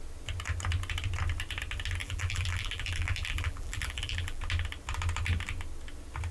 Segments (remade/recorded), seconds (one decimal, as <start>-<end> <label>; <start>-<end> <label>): 0.0-2.0 recorded; 2.0-4.4 remade; 4.4-6.3 recorded